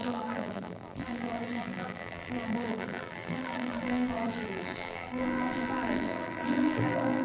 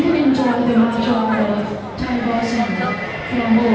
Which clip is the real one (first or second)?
second